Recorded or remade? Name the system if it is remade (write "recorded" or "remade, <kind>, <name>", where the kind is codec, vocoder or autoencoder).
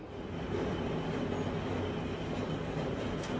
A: recorded